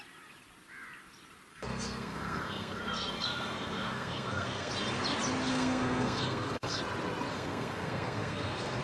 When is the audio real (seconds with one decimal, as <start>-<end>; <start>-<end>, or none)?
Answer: 0.0-1.5; 4.7-5.5; 6.8-7.3